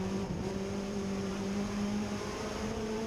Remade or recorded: remade